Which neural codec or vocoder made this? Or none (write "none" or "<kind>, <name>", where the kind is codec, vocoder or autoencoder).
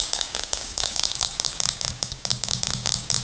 codec, DAC